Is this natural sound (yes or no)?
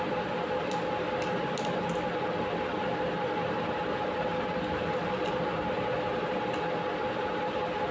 yes